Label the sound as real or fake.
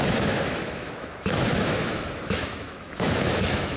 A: fake